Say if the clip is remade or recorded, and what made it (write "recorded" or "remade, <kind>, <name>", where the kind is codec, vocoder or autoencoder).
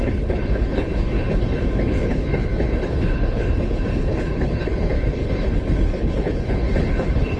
remade, codec, HILCodec